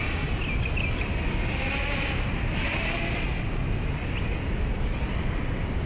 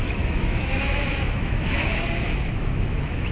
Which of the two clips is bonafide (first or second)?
first